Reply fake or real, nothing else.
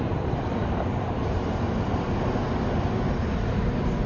real